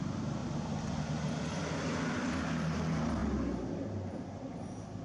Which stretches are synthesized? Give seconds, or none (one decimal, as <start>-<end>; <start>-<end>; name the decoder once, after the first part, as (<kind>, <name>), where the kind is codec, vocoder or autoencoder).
none

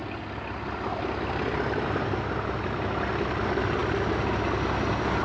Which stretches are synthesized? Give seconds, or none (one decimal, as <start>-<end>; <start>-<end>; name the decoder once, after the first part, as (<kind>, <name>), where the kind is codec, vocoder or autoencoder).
none

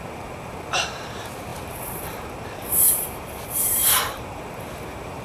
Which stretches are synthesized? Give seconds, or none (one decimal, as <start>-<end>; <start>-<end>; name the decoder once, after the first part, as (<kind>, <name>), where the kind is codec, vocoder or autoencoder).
0.0-5.2 (vocoder, BigVGAN v2)

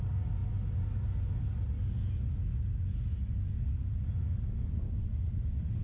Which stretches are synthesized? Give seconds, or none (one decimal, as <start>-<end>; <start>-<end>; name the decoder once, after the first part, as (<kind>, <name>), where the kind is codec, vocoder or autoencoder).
none

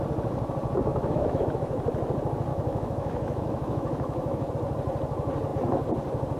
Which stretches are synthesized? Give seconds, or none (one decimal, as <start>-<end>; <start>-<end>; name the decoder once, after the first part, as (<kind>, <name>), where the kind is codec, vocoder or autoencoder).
0.9-1.8 (autoencoder, DAC-VAE); 2.5-4.5

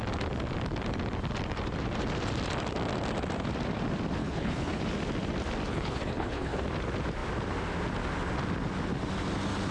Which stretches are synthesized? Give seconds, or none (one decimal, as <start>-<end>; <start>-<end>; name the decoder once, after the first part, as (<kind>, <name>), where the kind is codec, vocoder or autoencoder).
4.2-4.8 (codec, HILCodec); 5.7-6.6

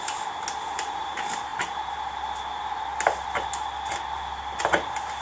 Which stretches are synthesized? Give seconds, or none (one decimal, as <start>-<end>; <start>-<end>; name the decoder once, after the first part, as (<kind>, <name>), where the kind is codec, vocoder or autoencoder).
none